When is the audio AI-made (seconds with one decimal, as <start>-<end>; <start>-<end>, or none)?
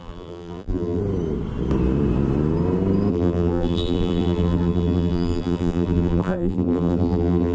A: 0.0-1.0; 3.1-7.5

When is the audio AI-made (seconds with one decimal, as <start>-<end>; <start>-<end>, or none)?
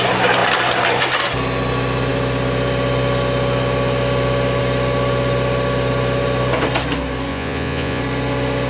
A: 7.3-8.0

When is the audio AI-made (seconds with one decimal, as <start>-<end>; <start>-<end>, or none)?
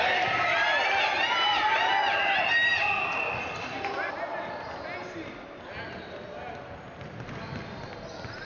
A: none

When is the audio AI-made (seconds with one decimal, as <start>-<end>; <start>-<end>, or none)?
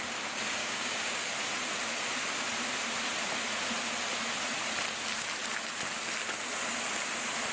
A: 0.6-1.3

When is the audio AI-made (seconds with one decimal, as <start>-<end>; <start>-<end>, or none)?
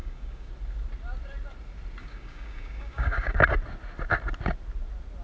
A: 0.0-0.5; 2.0-3.4